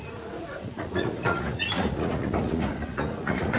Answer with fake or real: fake